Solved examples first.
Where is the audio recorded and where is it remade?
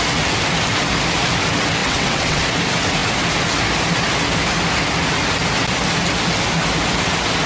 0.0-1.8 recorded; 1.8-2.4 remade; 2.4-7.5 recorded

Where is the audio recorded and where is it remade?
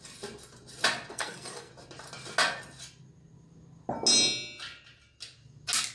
0.0-1.1 recorded; 1.1-1.7 remade; 1.7-5.9 recorded